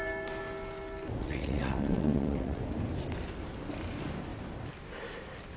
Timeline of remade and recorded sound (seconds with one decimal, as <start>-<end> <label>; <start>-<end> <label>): 0.0-1.2 recorded; 1.2-2.6 remade; 2.6-5.6 recorded